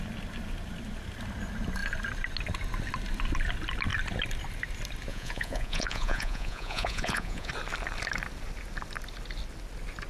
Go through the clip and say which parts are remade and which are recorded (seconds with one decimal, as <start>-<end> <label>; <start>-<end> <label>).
0.0-5.1 recorded; 5.1-7.5 remade; 7.5-10.1 recorded